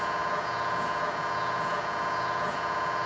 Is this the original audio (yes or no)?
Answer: no